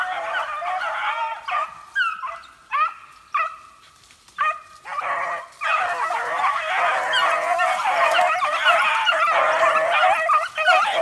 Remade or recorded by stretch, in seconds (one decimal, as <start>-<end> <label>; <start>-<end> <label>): 0.0-11.0 recorded